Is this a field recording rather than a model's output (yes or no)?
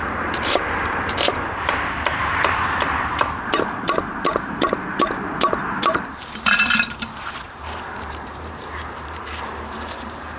no